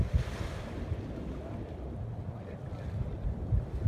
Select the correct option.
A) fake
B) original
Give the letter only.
B